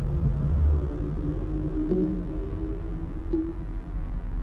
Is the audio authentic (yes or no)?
no